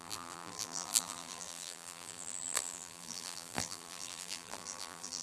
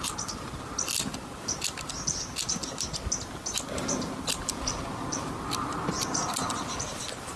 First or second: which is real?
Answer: second